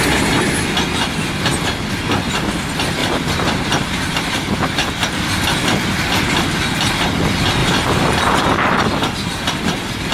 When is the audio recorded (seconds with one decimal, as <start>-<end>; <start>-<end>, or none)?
0.0-3.0; 4.3-7.6; 8.8-10.1